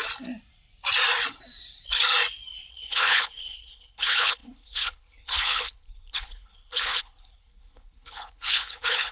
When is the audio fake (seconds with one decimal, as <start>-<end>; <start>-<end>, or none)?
2.7-9.1